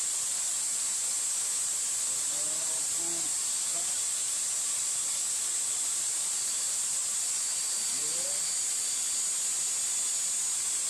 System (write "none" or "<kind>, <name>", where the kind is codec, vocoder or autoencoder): none